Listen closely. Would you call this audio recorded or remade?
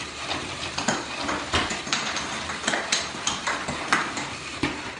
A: remade